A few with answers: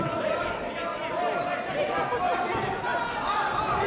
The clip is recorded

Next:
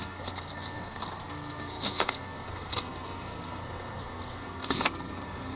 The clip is remade